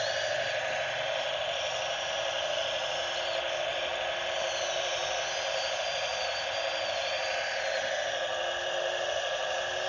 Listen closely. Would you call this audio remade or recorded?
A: recorded